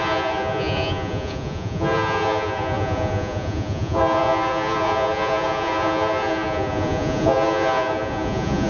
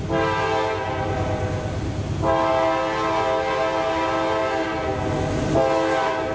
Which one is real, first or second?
second